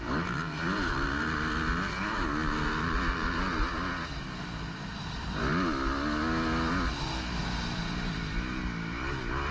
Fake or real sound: real